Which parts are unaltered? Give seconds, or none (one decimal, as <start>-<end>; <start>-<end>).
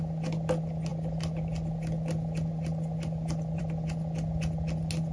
0.0-5.1